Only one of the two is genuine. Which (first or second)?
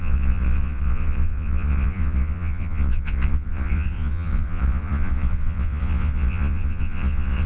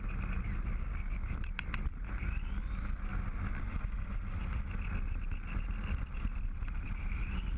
second